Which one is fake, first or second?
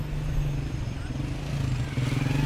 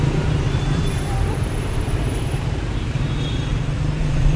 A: second